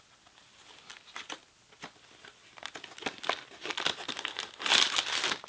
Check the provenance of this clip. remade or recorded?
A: recorded